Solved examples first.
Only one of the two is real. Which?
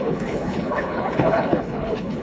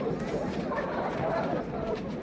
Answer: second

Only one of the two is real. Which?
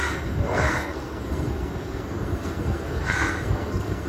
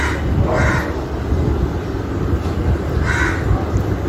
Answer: second